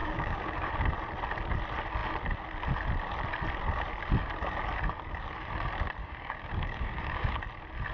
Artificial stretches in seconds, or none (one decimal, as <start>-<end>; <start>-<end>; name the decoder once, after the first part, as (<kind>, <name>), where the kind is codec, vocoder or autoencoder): 0.0-0.7 (codec, DAC); 6.0-7.3